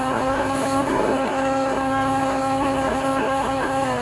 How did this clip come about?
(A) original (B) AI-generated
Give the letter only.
B